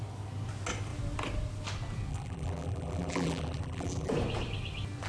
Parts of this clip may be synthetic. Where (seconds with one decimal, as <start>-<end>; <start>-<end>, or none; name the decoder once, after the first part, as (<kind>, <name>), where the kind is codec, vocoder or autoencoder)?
2.1-4.1 (vocoder, BigVGAN v2)